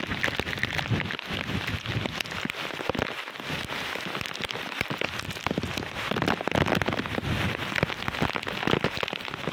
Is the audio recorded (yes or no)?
yes